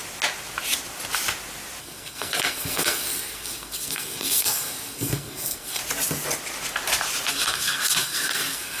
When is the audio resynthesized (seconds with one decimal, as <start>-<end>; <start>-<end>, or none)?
1.8-5.8; 7.3-8.8